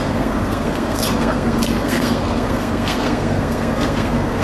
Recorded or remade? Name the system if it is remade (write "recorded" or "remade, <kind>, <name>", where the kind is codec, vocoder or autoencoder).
remade, codec, SNAC